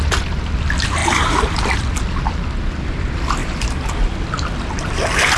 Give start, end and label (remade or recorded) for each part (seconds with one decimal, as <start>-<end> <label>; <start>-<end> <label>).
0.0-1.0 recorded; 1.0-1.6 remade; 1.6-3.4 recorded; 3.4-3.9 remade; 3.9-5.4 recorded